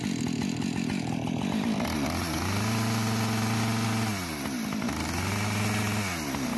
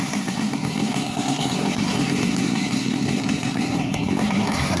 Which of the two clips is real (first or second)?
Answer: first